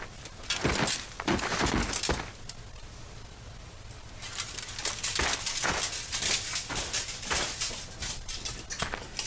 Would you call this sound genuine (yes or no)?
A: yes